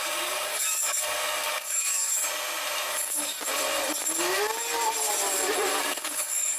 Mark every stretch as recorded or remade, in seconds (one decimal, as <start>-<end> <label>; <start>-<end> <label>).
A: 0.0-2.2 remade; 2.2-2.9 recorded; 2.9-3.3 remade; 3.3-5.8 recorded; 5.8-6.6 remade